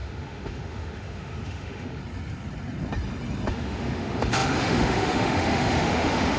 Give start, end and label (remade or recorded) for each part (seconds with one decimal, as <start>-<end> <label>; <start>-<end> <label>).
0.0-2.0 remade; 2.0-3.5 recorded; 3.5-6.4 remade

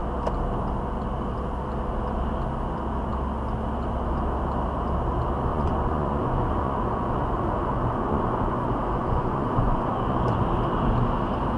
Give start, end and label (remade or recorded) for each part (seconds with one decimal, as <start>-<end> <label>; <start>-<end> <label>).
0.0-5.5 recorded; 5.5-10.4 remade; 10.4-11.6 recorded

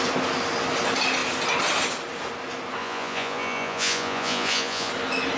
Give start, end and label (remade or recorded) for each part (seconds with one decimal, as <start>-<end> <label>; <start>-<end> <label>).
0.0-2.8 recorded; 2.8-4.9 remade; 4.9-5.4 recorded

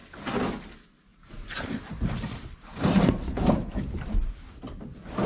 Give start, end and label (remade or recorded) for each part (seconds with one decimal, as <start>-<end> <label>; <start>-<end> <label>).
0.0-1.1 recorded; 1.1-4.3 remade; 4.3-5.3 recorded

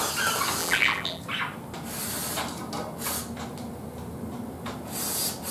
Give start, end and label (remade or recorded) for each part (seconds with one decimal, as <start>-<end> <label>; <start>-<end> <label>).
0.0-0.6 recorded; 0.6-1.2 remade; 1.2-5.5 recorded

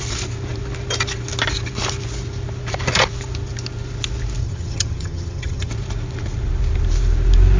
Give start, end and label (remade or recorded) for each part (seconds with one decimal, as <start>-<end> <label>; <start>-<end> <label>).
0.0-4.4 recorded; 4.4-5.7 remade; 5.7-7.6 recorded